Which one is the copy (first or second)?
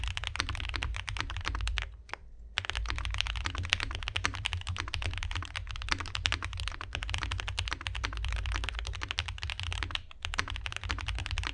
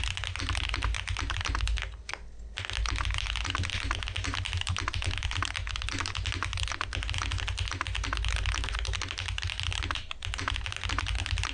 first